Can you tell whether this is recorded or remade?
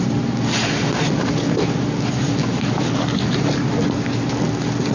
recorded